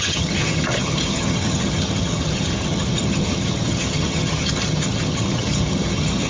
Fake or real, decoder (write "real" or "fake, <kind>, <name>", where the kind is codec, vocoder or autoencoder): fake, vocoder, HiFi-GAN